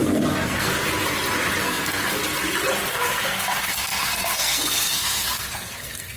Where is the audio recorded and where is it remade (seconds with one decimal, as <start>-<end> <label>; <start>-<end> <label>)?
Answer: 0.0-0.7 remade; 0.7-1.6 recorded; 1.6-2.2 remade; 2.2-2.9 recorded; 2.9-6.2 remade